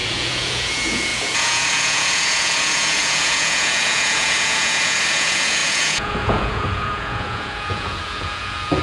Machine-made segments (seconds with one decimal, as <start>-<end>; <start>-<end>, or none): 0.0-8.8